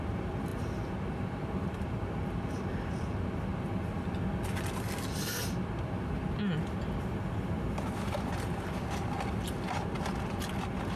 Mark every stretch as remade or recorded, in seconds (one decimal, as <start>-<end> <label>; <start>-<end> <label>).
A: 0.0-11.0 recorded